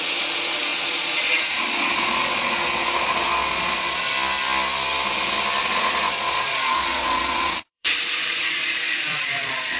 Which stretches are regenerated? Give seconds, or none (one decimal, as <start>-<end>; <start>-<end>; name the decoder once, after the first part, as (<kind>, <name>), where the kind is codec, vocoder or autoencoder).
0.0-4.1 (vocoder, Vocos); 5.6-9.8